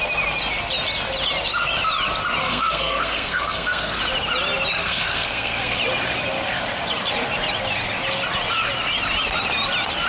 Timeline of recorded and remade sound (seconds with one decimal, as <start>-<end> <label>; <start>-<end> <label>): 0.0-2.4 recorded; 2.4-4.0 remade; 4.0-4.8 recorded; 4.8-5.8 remade; 5.8-10.1 recorded